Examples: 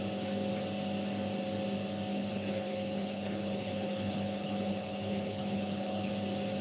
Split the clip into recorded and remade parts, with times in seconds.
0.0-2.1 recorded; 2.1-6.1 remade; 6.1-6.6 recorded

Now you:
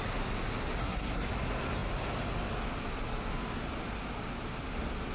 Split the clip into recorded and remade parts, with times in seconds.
0.0-0.8 recorded; 0.8-1.3 remade; 1.3-5.1 recorded

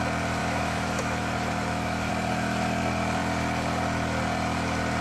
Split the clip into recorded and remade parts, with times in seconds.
0.0-0.4 recorded; 0.4-2.1 remade; 2.1-5.0 recorded

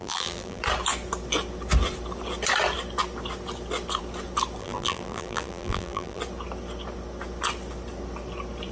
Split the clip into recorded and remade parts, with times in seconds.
0.0-0.6 remade; 0.6-4.6 recorded; 4.6-6.2 remade; 6.2-8.7 recorded